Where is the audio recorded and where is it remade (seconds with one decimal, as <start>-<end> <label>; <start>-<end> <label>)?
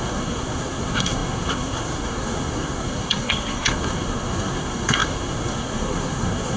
0.0-6.6 remade